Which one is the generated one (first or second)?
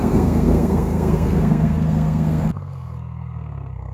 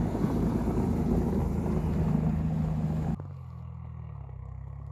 first